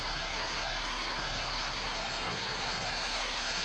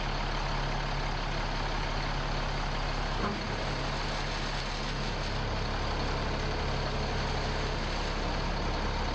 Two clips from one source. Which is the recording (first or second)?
second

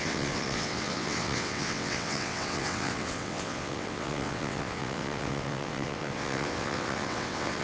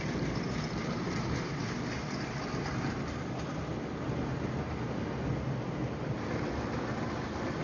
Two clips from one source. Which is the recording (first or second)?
second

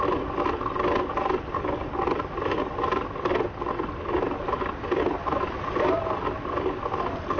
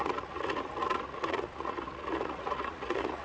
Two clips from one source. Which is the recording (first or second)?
first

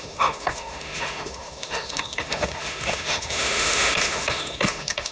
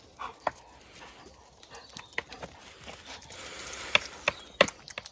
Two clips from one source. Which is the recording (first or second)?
second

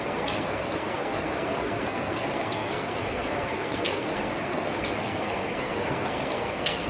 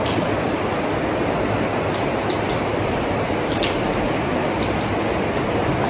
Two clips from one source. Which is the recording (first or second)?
second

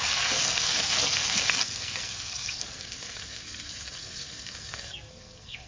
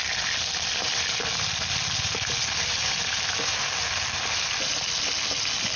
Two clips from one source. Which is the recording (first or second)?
second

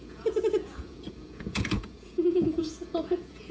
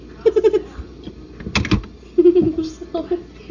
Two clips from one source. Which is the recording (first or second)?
second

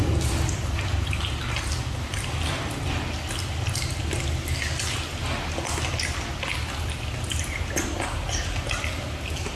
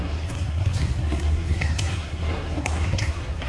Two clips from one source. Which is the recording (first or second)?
first